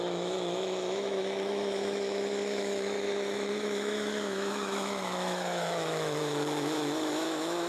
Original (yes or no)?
no